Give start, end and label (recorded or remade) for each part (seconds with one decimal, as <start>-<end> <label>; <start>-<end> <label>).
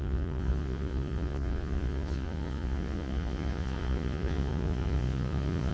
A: 0.0-5.7 remade